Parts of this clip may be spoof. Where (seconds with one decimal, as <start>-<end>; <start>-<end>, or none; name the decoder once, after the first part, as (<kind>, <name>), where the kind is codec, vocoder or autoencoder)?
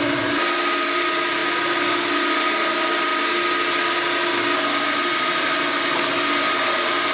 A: none